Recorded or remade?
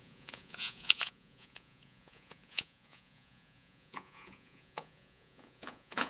remade